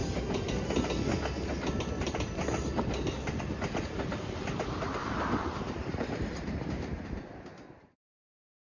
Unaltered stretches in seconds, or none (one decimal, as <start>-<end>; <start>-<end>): 0.0-5.0; 7.2-8.6